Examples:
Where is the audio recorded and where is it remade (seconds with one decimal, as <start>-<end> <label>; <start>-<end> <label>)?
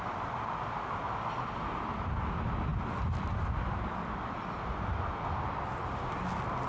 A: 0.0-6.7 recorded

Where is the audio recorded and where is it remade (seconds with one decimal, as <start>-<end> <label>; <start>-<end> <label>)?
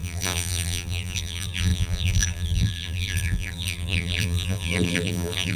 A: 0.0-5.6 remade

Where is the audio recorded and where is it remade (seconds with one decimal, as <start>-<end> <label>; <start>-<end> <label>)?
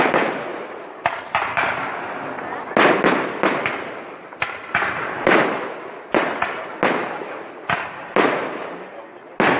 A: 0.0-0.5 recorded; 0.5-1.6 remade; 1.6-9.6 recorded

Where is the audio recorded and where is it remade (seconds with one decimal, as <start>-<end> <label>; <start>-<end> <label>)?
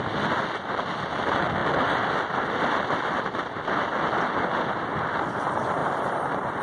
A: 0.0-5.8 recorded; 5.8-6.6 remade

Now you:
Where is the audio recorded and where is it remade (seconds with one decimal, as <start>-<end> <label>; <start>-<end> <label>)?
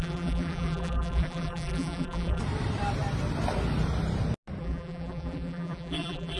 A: 0.0-2.4 remade; 2.4-4.6 recorded; 4.6-6.4 remade